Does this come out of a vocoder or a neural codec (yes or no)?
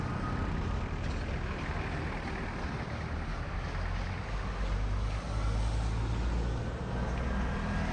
no